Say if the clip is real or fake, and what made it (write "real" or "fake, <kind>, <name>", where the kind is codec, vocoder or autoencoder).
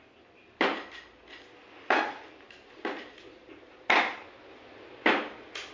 real